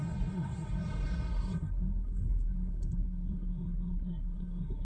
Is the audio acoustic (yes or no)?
no